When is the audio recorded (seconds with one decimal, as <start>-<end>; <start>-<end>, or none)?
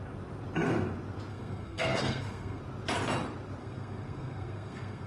0.0-1.3; 2.6-3.6